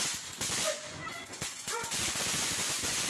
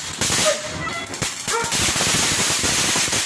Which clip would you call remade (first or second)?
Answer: first